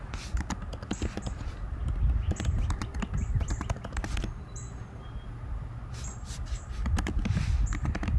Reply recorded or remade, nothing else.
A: recorded